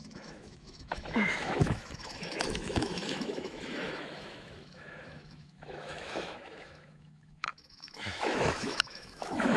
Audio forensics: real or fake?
fake